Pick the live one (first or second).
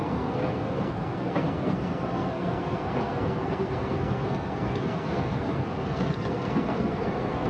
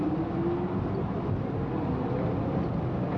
second